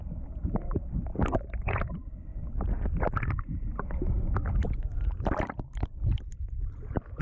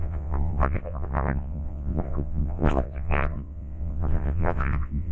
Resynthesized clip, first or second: second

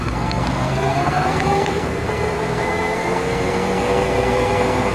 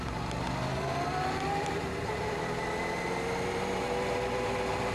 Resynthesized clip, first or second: first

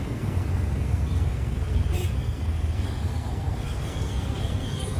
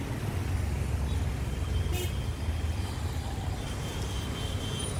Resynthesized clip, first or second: first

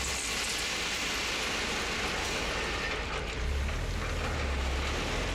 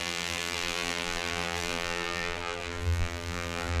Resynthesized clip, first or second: second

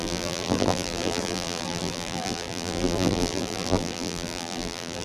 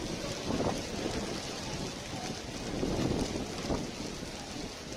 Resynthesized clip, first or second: first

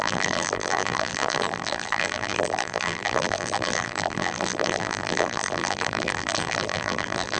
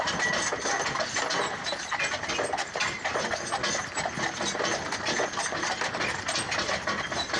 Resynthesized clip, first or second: first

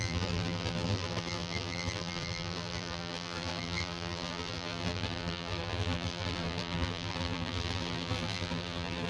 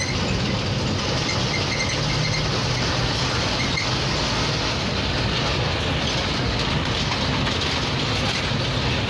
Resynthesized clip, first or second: first